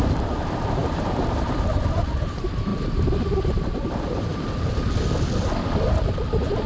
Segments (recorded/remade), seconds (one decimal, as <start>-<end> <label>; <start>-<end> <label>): 0.0-2.7 remade; 2.7-3.9 recorded; 3.9-4.3 remade; 4.3-6.7 recorded